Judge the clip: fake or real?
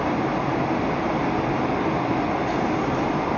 real